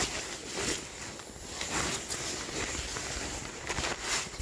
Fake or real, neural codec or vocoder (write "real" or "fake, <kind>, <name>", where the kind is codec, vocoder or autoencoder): real